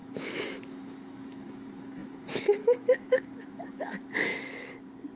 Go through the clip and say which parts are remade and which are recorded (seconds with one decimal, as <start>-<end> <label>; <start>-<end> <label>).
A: 0.0-4.3 remade; 4.3-5.2 recorded